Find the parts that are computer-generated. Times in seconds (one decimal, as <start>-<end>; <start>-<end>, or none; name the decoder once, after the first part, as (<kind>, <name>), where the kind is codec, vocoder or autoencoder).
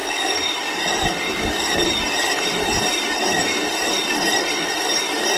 0.0-5.4 (vocoder, BigVGAN v2)